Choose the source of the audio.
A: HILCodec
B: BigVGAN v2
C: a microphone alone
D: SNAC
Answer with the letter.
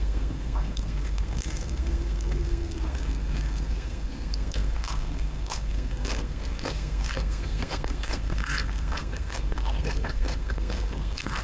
D